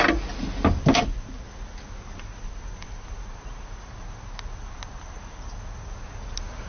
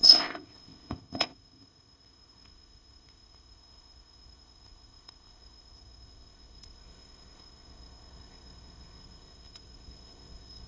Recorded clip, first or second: first